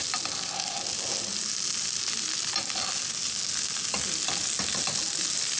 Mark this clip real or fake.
real